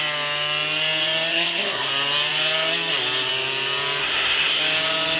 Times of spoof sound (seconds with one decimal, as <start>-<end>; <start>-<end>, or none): 1.3-1.9; 4.0-4.6